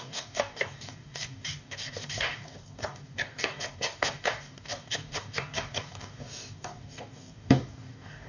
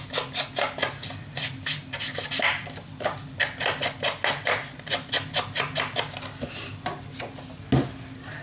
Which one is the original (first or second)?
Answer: second